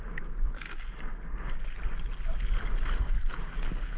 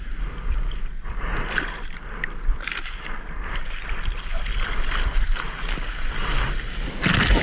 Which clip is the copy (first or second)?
second